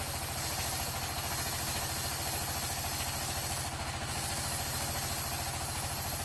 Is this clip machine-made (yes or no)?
no